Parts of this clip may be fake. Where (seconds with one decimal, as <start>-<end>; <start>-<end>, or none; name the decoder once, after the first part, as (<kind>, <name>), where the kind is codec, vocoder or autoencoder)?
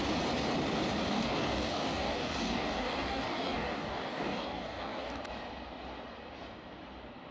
1.1-5.2 (codec, DAC)